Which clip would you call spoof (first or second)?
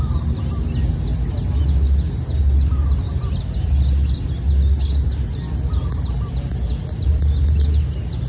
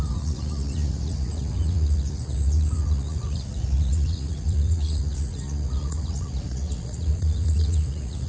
second